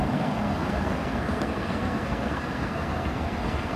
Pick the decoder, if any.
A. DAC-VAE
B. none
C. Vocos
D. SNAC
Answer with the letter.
D